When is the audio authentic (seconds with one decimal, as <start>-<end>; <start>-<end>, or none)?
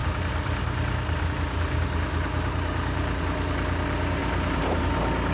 3.2-4.2; 4.8-5.3